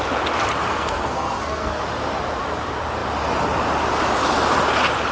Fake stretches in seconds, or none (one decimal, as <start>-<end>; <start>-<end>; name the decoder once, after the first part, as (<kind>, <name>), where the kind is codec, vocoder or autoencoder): 0.7-1.8 (codec, SNAC)